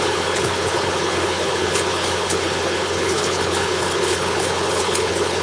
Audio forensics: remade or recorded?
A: remade